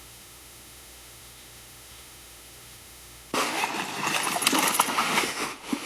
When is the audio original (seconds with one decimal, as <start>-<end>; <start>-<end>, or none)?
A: 3.6-4.9